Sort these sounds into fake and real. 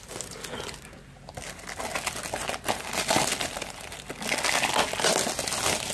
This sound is real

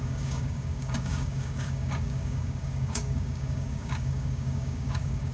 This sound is fake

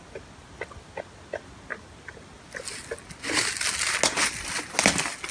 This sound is real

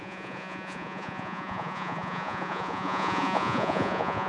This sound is fake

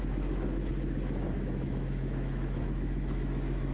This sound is fake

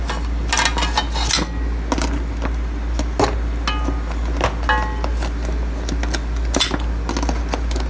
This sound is real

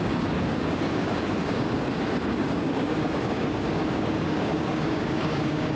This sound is fake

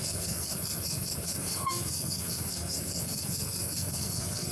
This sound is fake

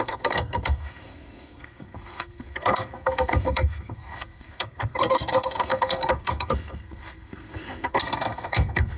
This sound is fake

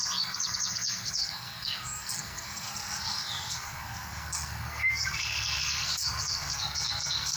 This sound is fake